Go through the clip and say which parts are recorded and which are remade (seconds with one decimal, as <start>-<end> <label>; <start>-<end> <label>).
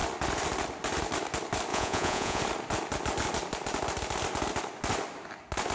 0.0-1.7 recorded; 1.7-2.4 remade; 2.4-5.7 recorded